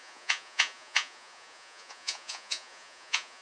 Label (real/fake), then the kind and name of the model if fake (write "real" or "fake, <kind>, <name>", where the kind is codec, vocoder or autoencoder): fake, vocoder, Vocos